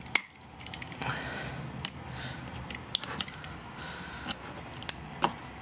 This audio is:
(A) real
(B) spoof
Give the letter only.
A